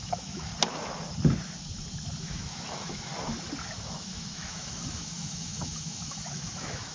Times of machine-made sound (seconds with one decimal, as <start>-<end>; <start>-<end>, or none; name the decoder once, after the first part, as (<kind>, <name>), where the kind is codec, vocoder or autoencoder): 0.0-0.5 (autoencoder, DAC-VAE); 2.2-3.1; 3.8-6.9